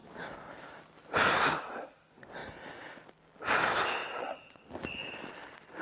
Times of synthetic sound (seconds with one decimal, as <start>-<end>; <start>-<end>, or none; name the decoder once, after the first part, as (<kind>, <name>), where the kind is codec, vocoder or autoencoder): 4.0-4.7 (vocoder, WaveNeXt)